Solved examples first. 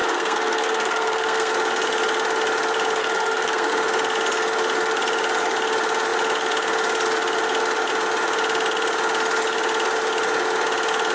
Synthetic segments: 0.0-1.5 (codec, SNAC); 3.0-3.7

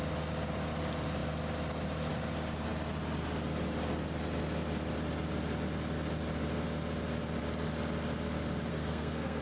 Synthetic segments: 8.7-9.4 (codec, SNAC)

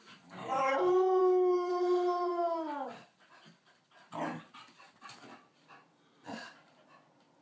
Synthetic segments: 1.2-1.7 (codec, SNAC)